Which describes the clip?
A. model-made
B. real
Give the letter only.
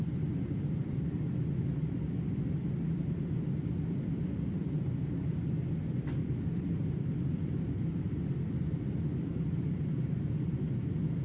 B